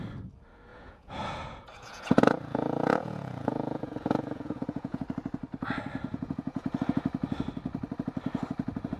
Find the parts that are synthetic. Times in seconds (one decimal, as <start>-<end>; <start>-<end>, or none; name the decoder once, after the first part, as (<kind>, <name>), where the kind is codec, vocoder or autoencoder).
0.7-5.0 (vocoder, Vocos); 6.1-6.8